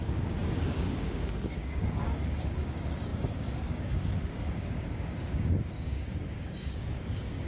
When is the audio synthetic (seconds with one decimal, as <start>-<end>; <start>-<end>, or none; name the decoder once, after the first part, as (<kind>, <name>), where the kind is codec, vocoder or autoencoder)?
0.0-7.5 (codec, DAC)

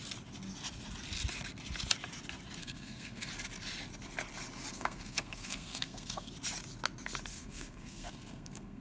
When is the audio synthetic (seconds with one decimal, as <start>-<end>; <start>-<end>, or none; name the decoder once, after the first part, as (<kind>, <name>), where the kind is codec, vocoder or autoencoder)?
2.6-3.3 (codec, SNAC); 4.7-6.3; 7.3-8.8

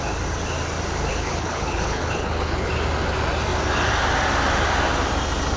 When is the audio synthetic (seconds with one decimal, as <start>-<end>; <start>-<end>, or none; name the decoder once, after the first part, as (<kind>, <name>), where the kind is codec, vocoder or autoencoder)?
1.1-2.7 (codec, HILCodec)

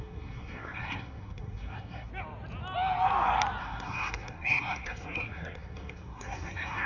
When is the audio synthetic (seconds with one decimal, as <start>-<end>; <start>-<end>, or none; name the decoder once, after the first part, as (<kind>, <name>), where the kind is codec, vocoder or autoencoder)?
0.0-2.1 (codec, SNAC); 3.6-6.9

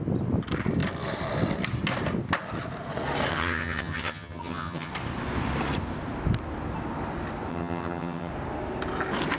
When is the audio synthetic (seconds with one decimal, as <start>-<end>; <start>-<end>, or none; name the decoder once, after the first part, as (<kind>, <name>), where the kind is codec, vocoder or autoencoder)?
3.3-4.9 (vocoder, HiFi-GAN); 7.5-8.3

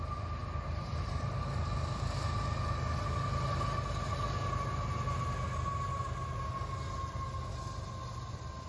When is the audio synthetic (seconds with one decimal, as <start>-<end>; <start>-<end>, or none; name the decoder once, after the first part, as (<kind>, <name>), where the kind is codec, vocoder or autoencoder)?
none